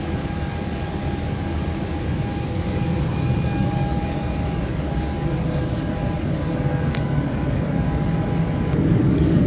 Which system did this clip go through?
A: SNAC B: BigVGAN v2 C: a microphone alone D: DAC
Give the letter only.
D